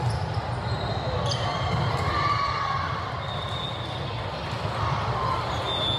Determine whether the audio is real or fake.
real